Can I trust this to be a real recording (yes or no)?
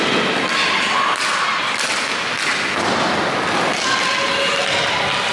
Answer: yes